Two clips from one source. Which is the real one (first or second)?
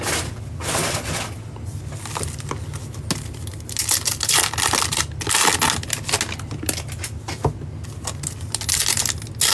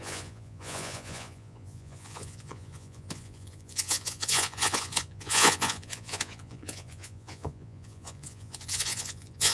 first